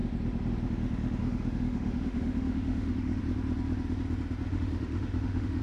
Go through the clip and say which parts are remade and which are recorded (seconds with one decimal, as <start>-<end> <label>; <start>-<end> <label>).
0.0-1.2 recorded; 1.2-3.2 remade; 3.2-4.5 recorded; 4.5-5.6 remade